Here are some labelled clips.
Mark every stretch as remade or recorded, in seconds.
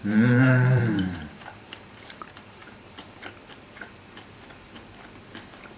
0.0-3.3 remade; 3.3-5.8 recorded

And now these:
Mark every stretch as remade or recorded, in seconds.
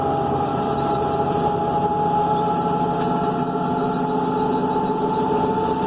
0.0-5.9 recorded